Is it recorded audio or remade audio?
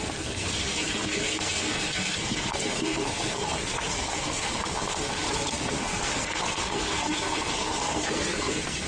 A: remade